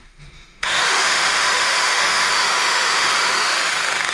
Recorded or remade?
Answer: remade